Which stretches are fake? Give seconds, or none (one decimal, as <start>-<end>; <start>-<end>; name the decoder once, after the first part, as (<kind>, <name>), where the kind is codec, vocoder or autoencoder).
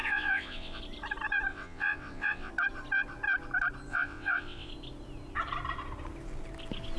0.0-0.8 (vocoder, WaveNeXt); 1.5-2.5; 3.9-4.7